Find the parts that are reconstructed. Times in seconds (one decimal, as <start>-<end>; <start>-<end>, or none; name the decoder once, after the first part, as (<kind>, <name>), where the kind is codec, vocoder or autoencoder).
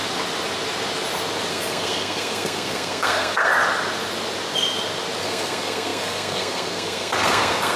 1.5-3.5 (codec, SNAC); 5.2-7.8